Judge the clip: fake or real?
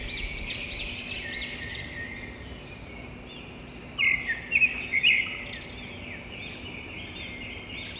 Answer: real